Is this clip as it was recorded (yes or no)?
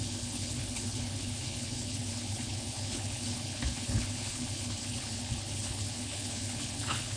no